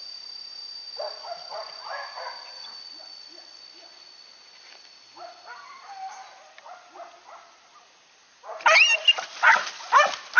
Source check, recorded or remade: recorded